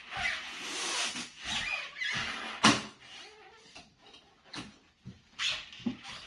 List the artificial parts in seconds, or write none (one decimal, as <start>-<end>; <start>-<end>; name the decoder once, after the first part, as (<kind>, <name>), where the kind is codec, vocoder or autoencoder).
none